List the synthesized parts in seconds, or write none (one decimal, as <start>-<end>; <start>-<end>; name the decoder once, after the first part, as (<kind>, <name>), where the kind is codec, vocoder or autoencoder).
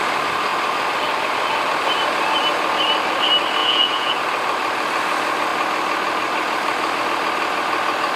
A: 3.6-4.2 (vocoder, Vocos)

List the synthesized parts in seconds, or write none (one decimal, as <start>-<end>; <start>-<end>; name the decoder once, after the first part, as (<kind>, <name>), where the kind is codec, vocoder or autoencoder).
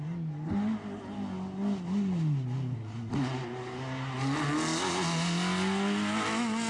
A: none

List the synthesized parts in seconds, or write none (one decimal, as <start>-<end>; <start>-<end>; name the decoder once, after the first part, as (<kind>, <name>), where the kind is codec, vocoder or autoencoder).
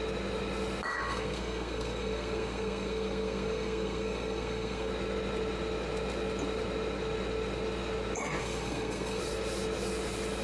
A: 0.9-4.9 (codec, SNAC); 8.4-9.2